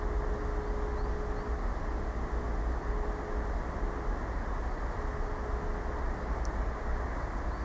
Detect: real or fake real